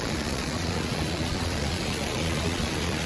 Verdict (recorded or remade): remade